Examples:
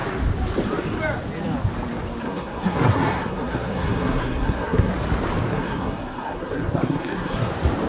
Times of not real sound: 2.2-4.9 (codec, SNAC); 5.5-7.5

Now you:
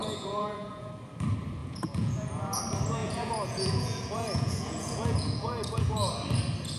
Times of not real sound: 0.0-0.9 (vocoder, Vocos); 1.6-2.6; 3.0-6.1